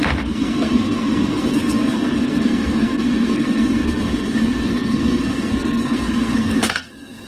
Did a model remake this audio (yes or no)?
yes